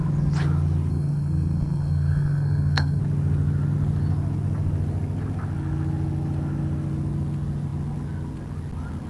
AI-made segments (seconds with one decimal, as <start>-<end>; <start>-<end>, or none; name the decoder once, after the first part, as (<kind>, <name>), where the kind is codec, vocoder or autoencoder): 0.9-3.0 (codec, SNAC)